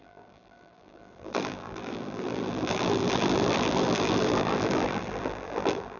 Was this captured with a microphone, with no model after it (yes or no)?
no